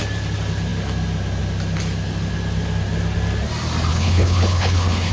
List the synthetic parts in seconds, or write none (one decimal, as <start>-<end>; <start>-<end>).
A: 3.9-5.1